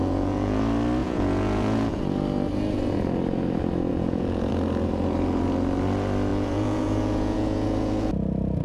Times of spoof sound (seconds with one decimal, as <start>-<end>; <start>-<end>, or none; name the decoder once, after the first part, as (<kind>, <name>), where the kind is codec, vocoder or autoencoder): 0.0-0.6 (vocoder, Vocos); 1.0-2.0; 3.9-4.5; 6.3-8.1